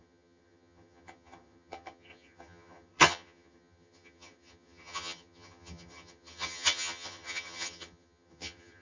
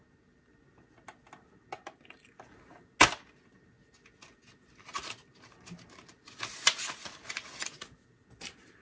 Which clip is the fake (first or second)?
first